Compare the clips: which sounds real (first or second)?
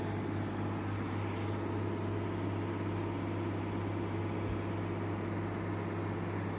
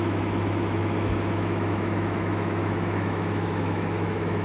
first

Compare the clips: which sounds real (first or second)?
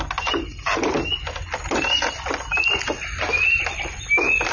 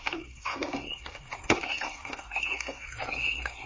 first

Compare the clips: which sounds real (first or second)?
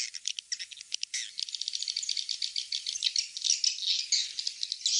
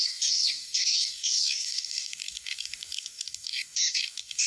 first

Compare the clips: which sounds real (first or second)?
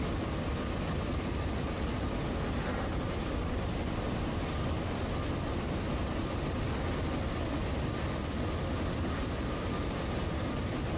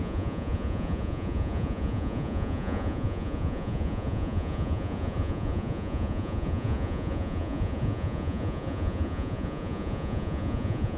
first